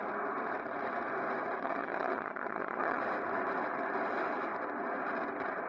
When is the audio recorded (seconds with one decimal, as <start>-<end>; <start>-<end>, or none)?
0.0-1.6; 3.0-5.7